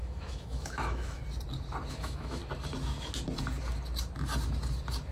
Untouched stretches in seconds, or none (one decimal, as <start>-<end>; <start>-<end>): 1.2-1.9; 2.4-5.1